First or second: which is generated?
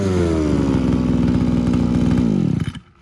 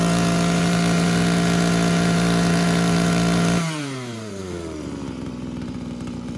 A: second